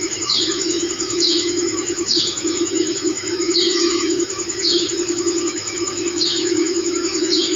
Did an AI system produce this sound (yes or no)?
yes